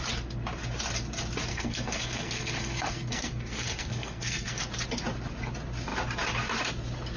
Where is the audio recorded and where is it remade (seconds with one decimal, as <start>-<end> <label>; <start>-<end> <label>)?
0.0-1.5 recorded; 1.5-4.6 remade; 4.6-7.2 recorded